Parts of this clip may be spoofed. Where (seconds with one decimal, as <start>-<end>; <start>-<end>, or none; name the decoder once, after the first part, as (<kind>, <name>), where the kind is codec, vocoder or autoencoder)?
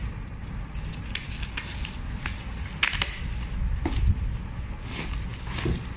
none